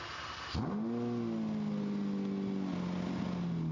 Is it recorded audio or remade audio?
recorded